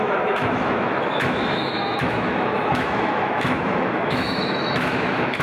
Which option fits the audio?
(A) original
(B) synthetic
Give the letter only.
B